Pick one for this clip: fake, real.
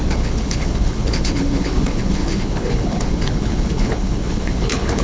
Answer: fake